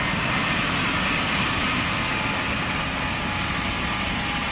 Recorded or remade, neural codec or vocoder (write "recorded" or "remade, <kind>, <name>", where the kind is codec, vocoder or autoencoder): recorded